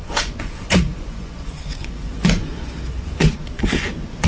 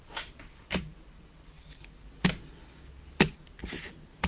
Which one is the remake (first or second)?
first